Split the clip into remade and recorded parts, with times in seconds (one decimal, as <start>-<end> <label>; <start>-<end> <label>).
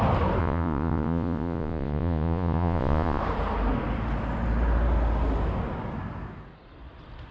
0.0-0.4 recorded; 0.4-3.2 remade; 3.2-7.3 recorded